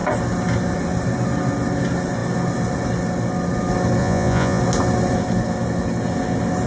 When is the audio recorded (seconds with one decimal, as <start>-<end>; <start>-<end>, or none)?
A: 0.0-4.0; 4.6-6.7